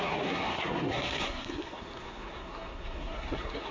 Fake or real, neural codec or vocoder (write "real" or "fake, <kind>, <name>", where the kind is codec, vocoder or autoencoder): fake, codec, SNAC